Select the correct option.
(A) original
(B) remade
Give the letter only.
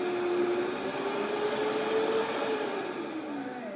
A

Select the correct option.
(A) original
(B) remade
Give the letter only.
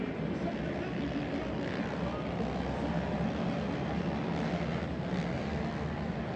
A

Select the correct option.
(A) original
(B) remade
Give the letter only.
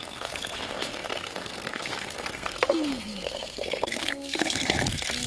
B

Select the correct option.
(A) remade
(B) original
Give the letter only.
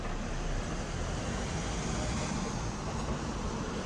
B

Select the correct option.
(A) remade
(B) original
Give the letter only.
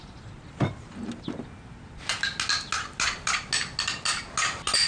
B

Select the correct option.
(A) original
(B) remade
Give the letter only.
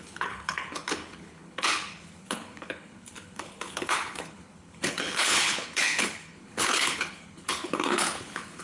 B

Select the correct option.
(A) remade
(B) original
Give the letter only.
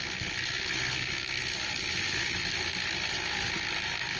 B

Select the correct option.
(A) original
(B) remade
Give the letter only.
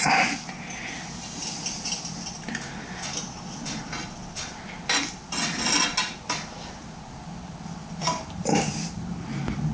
A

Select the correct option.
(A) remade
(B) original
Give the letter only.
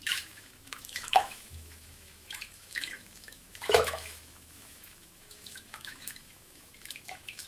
A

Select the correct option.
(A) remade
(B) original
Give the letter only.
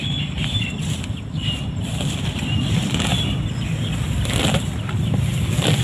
A